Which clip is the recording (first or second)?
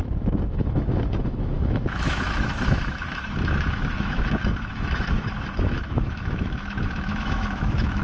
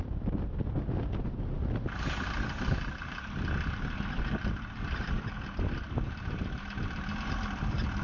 second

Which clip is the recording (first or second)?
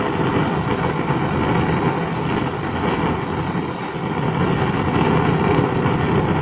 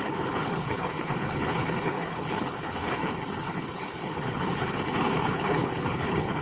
first